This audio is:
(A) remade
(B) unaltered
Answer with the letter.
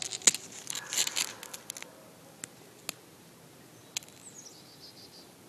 B